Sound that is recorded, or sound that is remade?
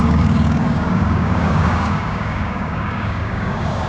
remade